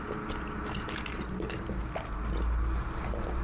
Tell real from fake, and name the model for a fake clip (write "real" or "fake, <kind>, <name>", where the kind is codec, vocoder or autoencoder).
real